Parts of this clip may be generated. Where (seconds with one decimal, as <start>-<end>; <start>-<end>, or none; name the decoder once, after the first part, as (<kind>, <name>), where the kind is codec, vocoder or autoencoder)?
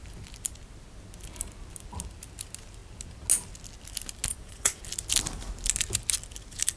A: 4.3-4.8 (vocoder, Vocos)